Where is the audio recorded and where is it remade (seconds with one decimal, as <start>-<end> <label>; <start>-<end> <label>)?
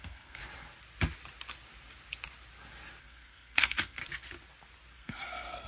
0.0-0.4 remade; 0.4-3.0 recorded; 3.0-4.0 remade; 4.0-4.9 recorded; 4.9-5.7 remade